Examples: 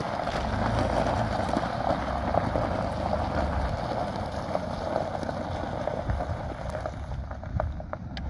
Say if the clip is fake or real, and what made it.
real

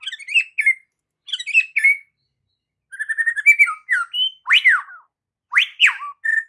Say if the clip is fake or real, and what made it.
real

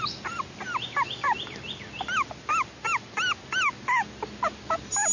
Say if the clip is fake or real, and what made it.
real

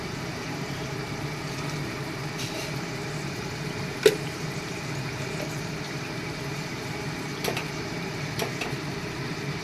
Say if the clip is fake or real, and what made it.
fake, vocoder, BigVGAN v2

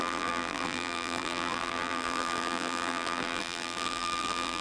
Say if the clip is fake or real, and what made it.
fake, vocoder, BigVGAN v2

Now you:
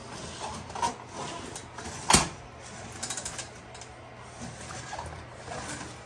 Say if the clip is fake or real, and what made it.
real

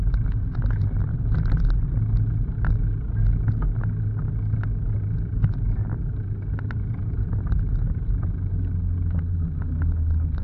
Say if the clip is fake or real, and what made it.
real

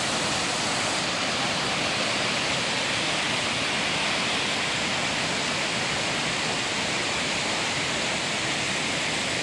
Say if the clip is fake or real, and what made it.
real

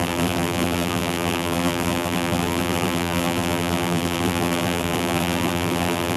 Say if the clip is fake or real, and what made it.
fake, vocoder, BigVGAN v2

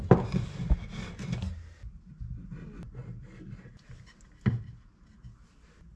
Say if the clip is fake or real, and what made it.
real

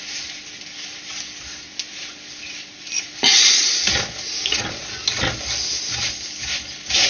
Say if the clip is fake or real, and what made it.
real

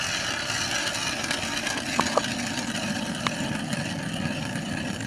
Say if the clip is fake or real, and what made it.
real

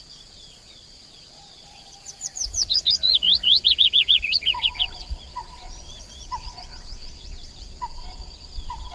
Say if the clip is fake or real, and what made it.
fake, vocoder, Vocos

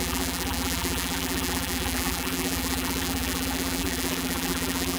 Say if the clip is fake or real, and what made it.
fake, vocoder, BigVGAN v2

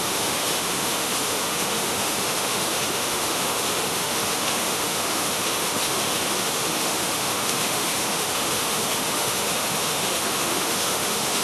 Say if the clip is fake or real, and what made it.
fake, autoencoder, DAC-VAE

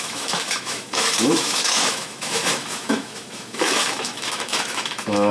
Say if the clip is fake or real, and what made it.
fake, autoencoder, DAC-VAE